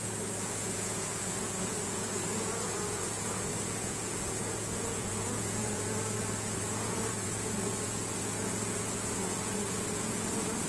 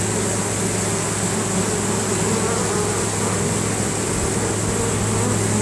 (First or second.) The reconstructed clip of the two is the first